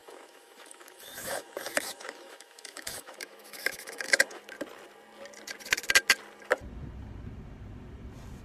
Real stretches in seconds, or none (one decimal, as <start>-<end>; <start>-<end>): 4.4-8.4